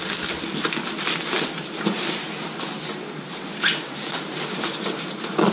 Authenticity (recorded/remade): recorded